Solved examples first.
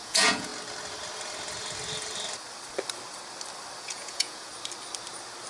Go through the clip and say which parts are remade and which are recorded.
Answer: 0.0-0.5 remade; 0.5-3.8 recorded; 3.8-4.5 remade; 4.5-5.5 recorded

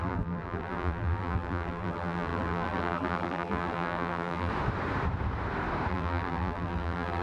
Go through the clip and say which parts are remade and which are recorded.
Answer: 0.0-4.5 remade; 4.5-5.9 recorded; 5.9-7.2 remade

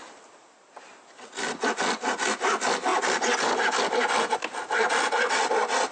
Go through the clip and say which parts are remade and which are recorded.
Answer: 0.0-5.9 recorded

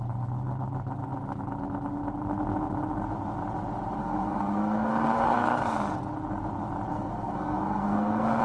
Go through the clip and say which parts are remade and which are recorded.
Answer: 0.0-4.0 recorded; 4.0-5.6 remade; 5.6-6.9 recorded; 6.9-8.4 remade

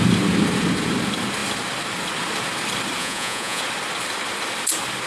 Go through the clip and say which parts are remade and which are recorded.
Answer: 0.0-3.0 recorded; 3.0-3.6 remade; 3.6-5.1 recorded

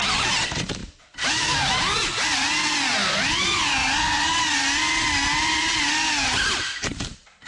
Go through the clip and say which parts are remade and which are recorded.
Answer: 0.0-0.8 recorded; 0.8-1.4 remade; 1.4-7.5 recorded

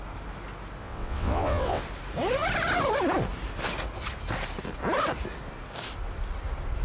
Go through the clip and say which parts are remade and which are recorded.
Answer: 0.0-0.8 recorded; 0.8-1.8 remade; 1.8-6.8 recorded

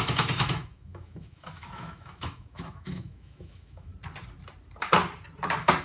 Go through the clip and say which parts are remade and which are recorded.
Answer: 0.0-3.9 remade; 3.9-5.8 recorded